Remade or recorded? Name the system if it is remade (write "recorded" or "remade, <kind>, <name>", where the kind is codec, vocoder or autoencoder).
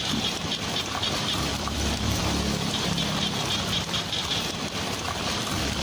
remade, vocoder, BigVGAN v2